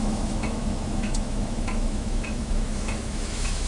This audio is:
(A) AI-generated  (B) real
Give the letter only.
A